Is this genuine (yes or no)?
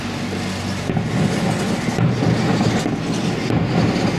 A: yes